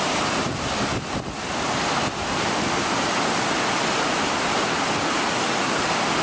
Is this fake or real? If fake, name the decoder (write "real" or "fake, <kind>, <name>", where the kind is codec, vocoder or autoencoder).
real